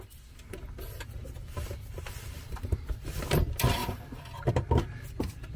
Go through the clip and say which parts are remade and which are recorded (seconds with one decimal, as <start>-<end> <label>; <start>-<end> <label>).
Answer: 0.0-1.2 recorded; 1.2-3.2 remade; 3.2-3.8 recorded; 3.8-4.5 remade; 4.5-5.6 recorded

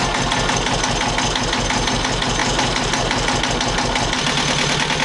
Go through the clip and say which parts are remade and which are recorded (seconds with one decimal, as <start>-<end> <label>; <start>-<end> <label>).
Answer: 0.0-2.4 recorded; 2.4-3.4 remade; 3.4-5.0 recorded

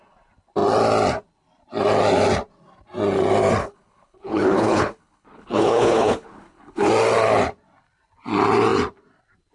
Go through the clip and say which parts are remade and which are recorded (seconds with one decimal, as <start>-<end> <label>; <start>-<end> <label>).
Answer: 0.0-3.6 recorded; 3.6-6.9 remade; 6.9-9.5 recorded

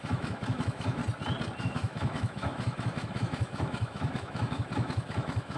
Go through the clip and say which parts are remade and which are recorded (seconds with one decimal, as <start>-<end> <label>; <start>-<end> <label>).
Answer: 0.0-1.0 remade; 1.0-1.6 recorded; 1.6-5.6 remade

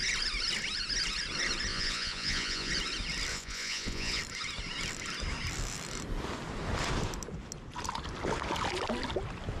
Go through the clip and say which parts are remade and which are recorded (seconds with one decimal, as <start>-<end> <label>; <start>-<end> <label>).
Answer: 0.0-1.7 recorded; 1.7-2.7 remade; 2.7-3.3 recorded; 3.3-4.2 remade; 4.2-9.6 recorded

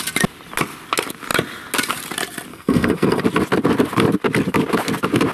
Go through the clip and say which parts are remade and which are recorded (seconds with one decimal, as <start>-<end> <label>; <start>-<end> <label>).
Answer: 0.0-2.5 recorded; 2.5-3.2 remade; 3.2-5.3 recorded